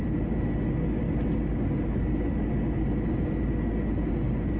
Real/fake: real